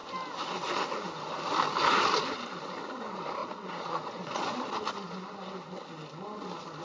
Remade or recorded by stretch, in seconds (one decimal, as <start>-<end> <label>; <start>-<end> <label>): 0.0-3.4 recorded; 3.4-4.7 remade; 4.7-6.8 recorded